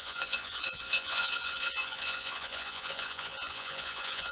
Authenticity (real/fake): fake